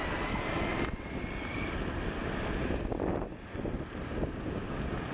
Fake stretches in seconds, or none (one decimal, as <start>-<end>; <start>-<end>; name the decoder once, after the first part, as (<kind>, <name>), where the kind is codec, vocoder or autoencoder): none